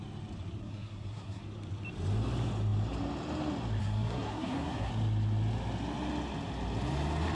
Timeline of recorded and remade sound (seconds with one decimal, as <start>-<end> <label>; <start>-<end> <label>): 0.0-0.6 recorded; 0.6-1.4 remade; 1.4-3.8 recorded; 3.8-4.9 remade; 4.9-7.3 recorded